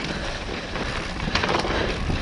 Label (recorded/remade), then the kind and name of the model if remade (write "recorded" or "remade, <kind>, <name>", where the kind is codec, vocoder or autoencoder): recorded